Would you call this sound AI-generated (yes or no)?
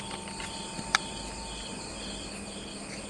no